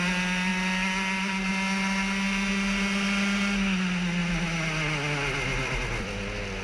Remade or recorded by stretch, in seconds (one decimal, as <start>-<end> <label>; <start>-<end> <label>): 0.0-6.6 recorded